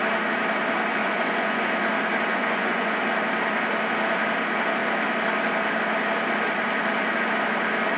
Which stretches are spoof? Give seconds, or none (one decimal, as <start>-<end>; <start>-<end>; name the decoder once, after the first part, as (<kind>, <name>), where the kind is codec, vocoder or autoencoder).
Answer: 1.0-1.7 (vocoder, Vocos); 2.3-3.0